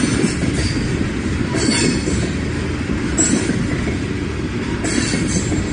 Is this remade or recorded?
recorded